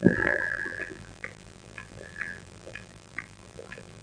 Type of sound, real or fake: fake